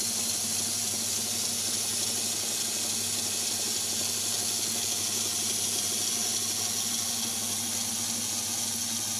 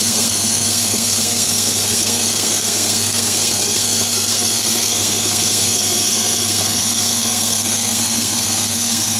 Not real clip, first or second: second